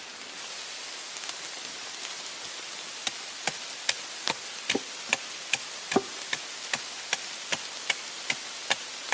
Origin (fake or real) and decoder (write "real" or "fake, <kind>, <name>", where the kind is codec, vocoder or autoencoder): real